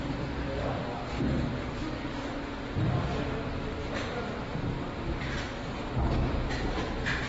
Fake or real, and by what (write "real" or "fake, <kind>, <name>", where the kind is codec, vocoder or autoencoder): real